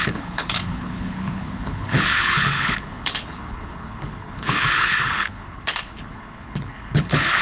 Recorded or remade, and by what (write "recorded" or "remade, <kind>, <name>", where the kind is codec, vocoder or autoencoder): remade, codec, HILCodec